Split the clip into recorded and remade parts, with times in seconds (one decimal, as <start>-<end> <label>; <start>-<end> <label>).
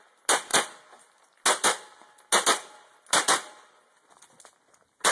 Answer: 0.0-5.1 recorded